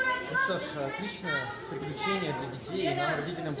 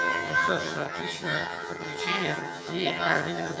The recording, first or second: first